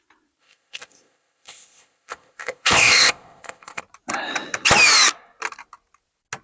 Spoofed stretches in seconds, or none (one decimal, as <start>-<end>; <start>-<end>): 0.4-3.8